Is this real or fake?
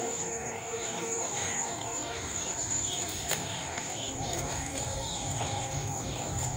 fake